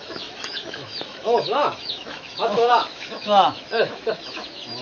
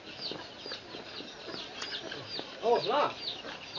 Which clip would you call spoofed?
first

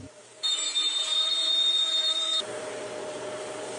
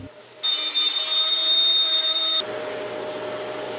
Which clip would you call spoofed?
first